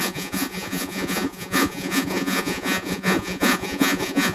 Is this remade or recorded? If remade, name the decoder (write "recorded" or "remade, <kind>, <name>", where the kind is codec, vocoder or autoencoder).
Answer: remade, vocoder, Vocos